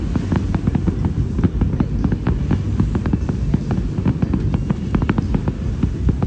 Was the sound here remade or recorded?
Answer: recorded